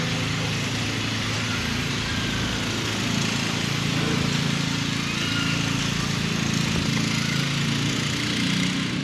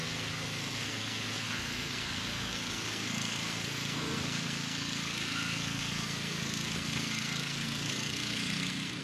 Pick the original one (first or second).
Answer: first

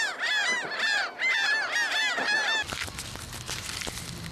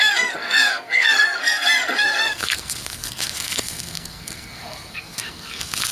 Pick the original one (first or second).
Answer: first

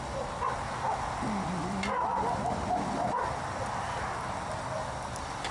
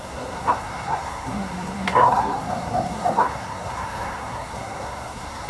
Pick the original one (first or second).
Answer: first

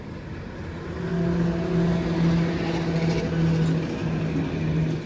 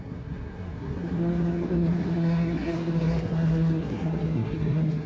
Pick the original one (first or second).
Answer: first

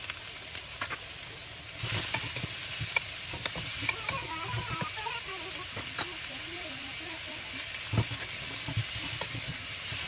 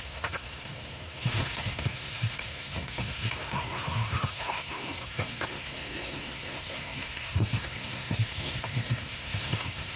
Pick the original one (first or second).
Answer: first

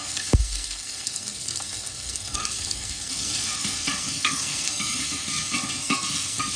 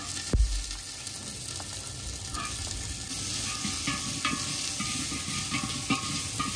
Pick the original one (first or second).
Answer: second